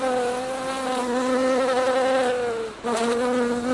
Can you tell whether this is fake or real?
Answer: real